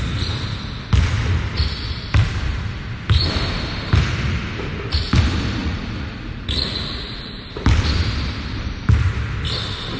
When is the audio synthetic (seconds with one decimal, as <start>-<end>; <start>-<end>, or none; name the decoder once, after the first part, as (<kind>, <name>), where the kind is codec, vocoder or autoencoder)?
5.6-7.3 (vocoder, Vocos)